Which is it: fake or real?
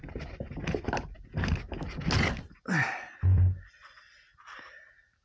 real